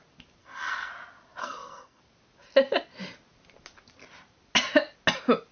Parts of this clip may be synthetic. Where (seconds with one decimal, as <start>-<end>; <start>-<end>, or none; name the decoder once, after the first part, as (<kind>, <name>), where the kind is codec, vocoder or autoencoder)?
0.4-0.9 (codec, SNAC); 1.4-2.0